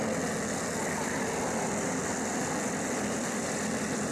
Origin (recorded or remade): recorded